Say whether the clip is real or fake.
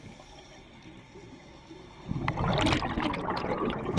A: real